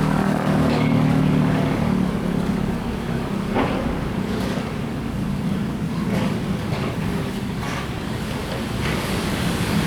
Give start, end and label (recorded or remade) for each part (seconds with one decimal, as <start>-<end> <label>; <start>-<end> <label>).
0.0-8.4 remade; 8.4-8.9 recorded; 8.9-9.9 remade